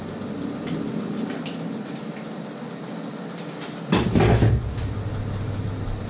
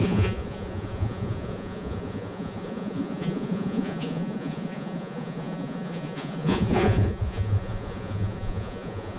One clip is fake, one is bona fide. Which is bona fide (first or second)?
first